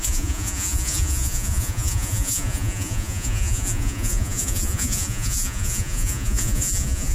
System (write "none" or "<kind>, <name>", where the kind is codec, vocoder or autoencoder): vocoder, Vocos